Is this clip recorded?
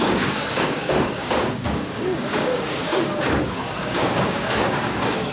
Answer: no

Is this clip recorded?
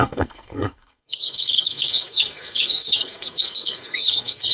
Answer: no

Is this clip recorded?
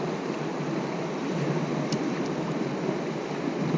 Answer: yes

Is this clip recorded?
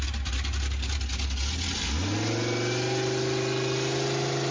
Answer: yes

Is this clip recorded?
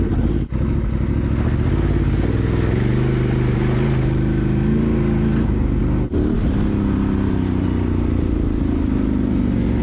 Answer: yes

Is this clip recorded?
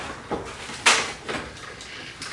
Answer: yes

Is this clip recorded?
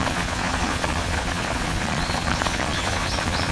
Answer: no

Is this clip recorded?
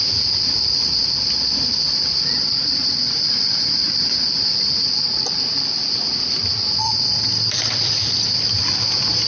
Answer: no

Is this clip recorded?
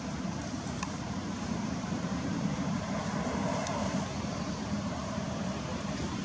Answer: no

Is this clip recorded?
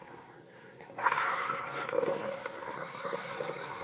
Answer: no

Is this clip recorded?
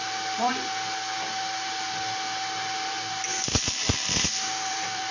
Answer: no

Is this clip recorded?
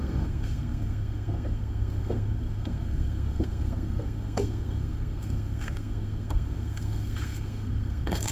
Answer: no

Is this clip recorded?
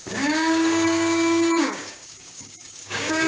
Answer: no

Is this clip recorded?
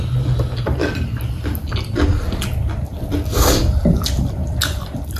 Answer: yes